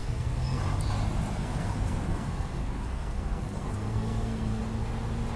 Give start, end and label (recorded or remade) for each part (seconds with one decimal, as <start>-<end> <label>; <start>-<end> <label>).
0.0-0.6 remade; 0.6-1.4 recorded; 1.4-4.6 remade; 4.6-5.4 recorded